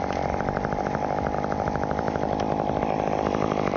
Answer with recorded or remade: recorded